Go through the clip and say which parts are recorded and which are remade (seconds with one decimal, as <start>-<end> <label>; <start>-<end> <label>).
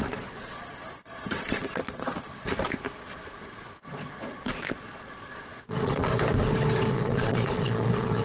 0.0-2.3 remade; 2.3-3.8 recorded; 3.8-6.1 remade; 6.1-6.9 recorded; 6.9-8.2 remade